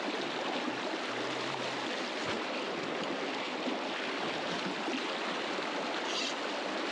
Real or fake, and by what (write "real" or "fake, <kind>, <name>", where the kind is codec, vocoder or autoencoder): real